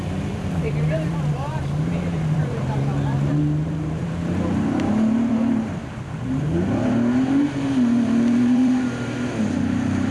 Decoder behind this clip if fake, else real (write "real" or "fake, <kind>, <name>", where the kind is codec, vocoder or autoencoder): fake, vocoder, BigVGAN v2